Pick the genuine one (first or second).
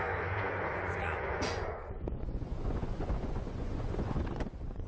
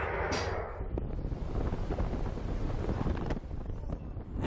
second